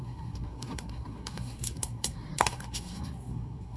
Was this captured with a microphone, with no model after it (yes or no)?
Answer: no